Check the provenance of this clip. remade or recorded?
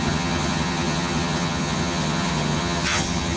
remade